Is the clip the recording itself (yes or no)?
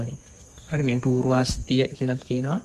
no